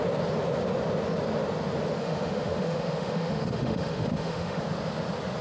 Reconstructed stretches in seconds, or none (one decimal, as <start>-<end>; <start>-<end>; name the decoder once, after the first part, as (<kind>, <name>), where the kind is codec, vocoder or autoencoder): 2.0-4.6 (autoencoder, DAC-VAE)